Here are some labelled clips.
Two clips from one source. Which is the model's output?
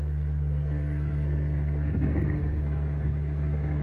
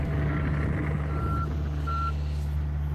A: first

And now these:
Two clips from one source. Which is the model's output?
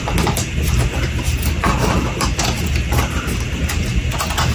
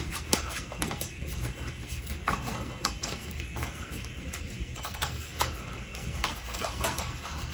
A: second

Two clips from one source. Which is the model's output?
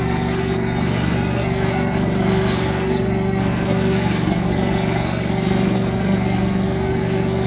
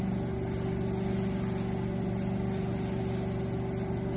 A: first